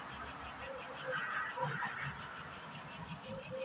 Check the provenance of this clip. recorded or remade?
recorded